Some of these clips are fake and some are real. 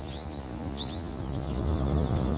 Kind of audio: fake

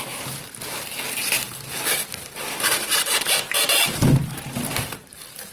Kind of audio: fake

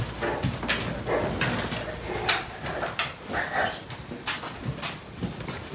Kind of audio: real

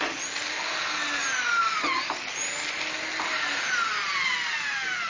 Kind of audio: real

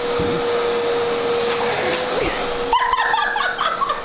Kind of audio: real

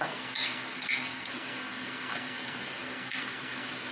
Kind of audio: fake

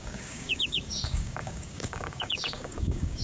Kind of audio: fake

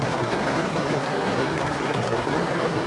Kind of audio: fake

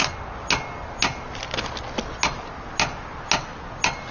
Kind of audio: real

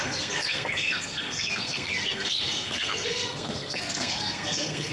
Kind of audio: fake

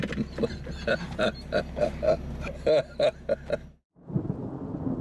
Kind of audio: real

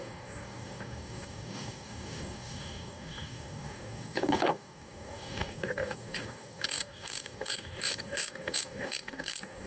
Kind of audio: fake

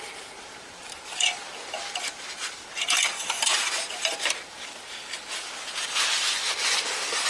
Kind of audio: fake